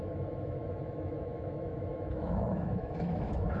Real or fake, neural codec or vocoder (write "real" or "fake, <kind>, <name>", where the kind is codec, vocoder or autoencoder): fake, autoencoder, DAC-VAE